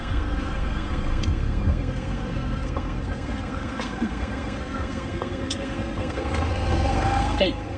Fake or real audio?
fake